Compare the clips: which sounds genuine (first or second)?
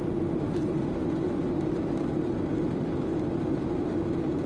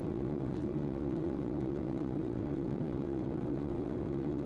first